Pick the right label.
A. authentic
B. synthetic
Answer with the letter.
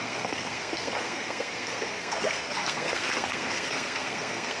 B